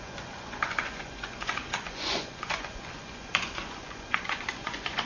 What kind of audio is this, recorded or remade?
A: remade